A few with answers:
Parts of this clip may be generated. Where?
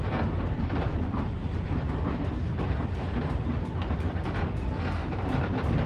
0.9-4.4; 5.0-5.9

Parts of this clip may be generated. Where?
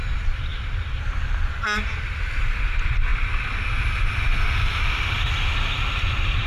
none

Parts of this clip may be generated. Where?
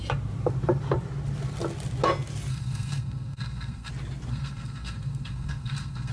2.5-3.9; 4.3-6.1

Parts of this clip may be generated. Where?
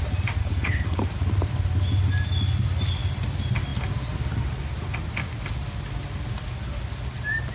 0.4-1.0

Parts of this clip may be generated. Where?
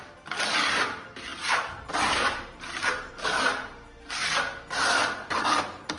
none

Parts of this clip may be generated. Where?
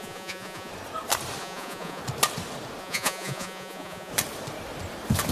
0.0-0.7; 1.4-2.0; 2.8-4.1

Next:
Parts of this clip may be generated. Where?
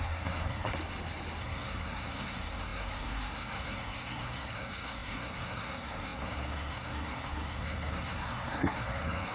0.0-0.8; 1.4-9.3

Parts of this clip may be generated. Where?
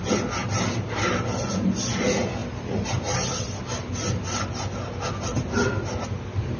none